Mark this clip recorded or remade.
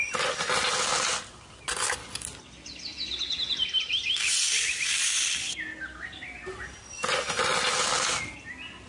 recorded